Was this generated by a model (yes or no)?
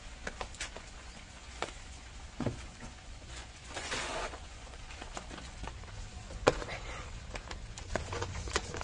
yes